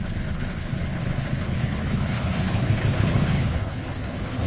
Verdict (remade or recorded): remade